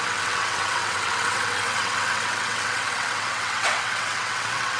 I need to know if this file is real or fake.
fake